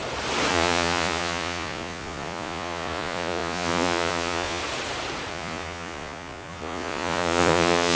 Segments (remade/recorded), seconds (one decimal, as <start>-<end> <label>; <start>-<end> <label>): 0.0-0.5 recorded; 0.5-4.6 remade; 4.6-5.3 recorded; 5.3-8.0 remade